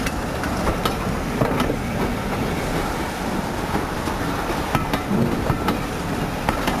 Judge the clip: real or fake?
real